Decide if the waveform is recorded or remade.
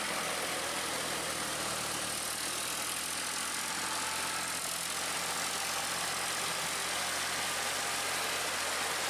recorded